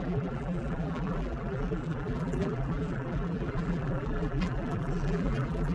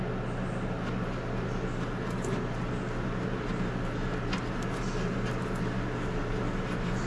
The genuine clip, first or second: second